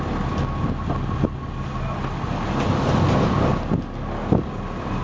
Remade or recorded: recorded